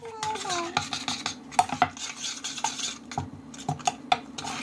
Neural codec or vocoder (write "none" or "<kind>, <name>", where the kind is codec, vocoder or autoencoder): none